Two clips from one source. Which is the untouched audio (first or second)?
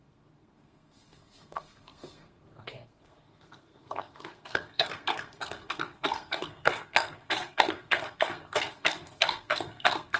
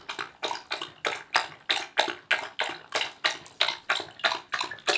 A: second